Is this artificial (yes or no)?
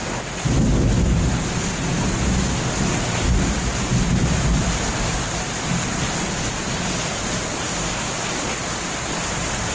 no